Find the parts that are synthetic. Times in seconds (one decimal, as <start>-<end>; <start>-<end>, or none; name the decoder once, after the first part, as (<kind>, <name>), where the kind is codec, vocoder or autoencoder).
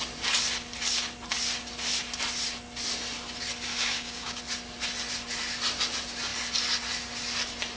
3.7-4.4 (codec, DAC)